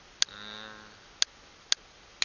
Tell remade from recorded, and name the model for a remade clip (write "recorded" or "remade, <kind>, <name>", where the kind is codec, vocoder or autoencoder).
recorded